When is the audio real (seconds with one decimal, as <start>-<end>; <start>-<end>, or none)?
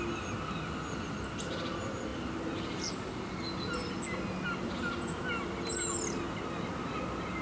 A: 0.0-7.4